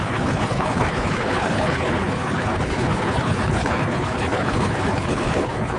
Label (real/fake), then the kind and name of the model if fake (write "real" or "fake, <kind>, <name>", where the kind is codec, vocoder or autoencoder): fake, codec, HILCodec